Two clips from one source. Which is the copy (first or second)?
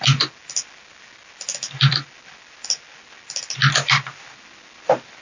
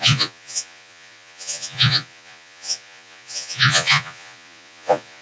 second